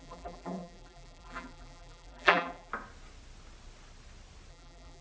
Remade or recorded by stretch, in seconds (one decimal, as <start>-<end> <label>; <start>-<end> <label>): 0.0-2.7 remade; 2.7-4.5 recorded; 4.5-5.0 remade